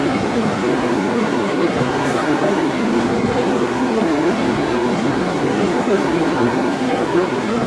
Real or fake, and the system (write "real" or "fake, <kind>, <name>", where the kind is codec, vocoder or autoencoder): fake, codec, SNAC